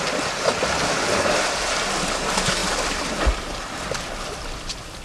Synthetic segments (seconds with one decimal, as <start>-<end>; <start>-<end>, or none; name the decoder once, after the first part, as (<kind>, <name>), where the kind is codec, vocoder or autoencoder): none